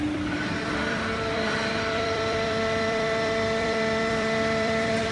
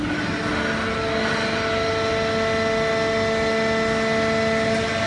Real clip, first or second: second